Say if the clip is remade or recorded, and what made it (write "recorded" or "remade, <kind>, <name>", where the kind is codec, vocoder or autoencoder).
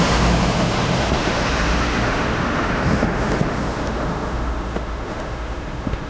remade, autoencoder, DAC-VAE